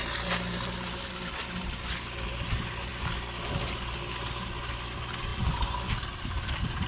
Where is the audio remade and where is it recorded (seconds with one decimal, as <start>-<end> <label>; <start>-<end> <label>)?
0.0-6.9 recorded